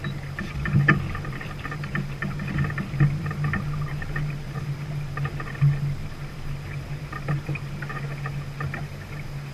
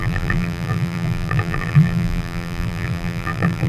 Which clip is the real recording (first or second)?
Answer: first